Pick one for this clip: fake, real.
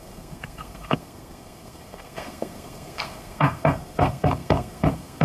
fake